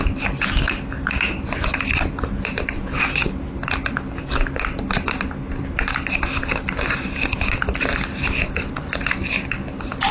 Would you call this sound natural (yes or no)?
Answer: yes